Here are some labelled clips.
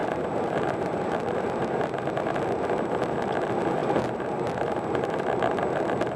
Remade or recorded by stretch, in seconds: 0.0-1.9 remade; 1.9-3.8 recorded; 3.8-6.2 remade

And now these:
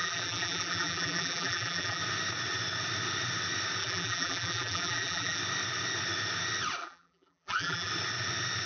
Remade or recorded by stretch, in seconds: 0.0-2.0 remade; 2.0-3.8 recorded; 3.8-5.4 remade; 5.4-6.8 recorded; 6.8-7.9 remade; 7.9-8.7 recorded

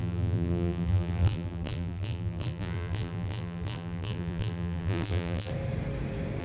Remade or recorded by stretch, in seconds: 0.0-5.5 remade; 5.5-6.4 recorded